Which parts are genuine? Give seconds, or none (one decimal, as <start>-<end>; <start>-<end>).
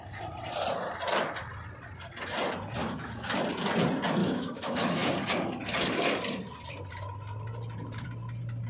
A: 0.0-2.8; 3.4-4.2; 5.1-8.7